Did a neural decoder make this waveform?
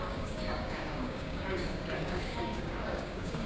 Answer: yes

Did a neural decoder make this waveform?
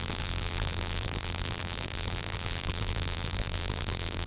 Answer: yes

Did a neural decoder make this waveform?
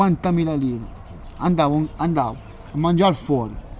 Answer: no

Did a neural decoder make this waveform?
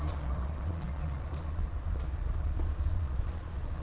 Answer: yes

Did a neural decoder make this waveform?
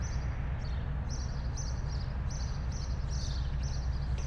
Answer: no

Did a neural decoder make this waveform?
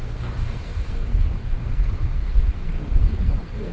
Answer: yes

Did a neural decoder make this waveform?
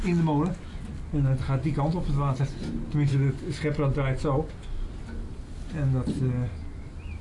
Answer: no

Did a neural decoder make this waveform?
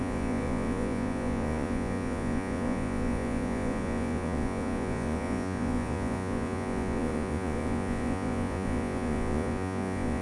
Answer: yes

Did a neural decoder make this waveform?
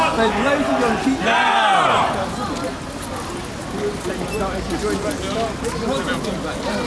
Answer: no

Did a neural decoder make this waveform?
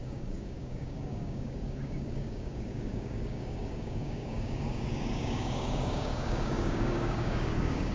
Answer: yes